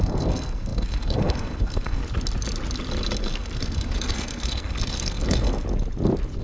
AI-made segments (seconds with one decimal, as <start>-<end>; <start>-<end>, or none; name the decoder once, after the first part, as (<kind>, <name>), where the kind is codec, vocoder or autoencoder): 0.0-2.0 (codec, SNAC); 3.2-5.5